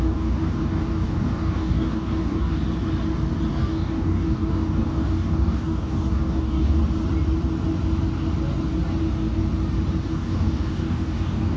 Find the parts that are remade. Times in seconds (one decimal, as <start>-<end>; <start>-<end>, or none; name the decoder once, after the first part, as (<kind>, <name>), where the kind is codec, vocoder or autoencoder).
0.0-2.6 (codec, DAC); 3.5-6.8; 9.0-9.4; 10.0-11.6